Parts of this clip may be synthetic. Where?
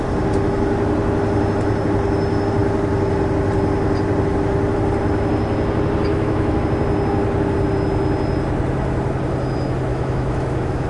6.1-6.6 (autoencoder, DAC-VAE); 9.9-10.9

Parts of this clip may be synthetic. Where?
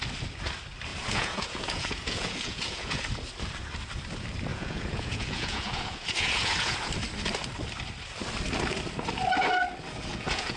0.9-3.0 (vocoder, Vocos); 4.5-6.9; 10.1-10.6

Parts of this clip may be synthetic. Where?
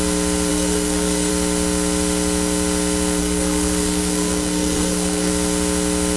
0.5-1.3 (codec, SNAC); 3.2-5.3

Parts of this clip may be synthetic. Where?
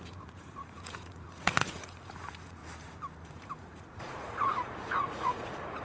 0.0-2.6 (vocoder, Vocos); 3.3-5.8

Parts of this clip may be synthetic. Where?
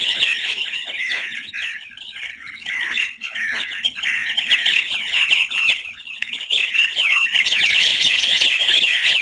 0.0-9.2 (codec, HILCodec)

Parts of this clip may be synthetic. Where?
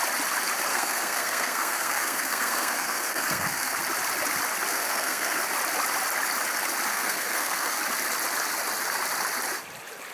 0.7-3.8 (codec, SNAC); 4.7-5.4; 6.9-7.8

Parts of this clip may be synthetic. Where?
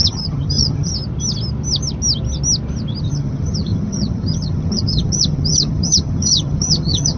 0.0-0.9 (vocoder, HiFi-GAN); 3.0-7.2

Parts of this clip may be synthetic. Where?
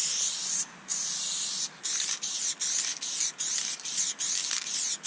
none